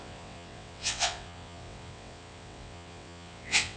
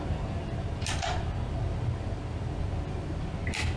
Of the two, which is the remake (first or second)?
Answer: first